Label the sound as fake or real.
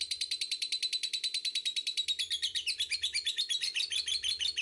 real